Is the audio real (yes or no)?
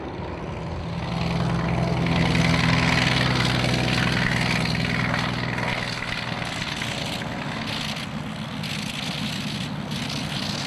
yes